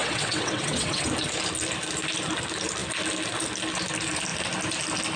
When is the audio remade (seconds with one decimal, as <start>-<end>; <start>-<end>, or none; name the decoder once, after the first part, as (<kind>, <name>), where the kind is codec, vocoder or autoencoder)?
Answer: 0.0-1.1 (vocoder, WaveNeXt)